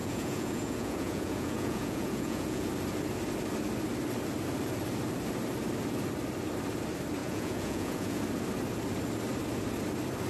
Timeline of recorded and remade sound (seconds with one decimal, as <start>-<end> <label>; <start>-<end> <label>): 0.0-2.7 remade; 2.7-7.2 recorded; 7.2-8.2 remade; 8.2-10.3 recorded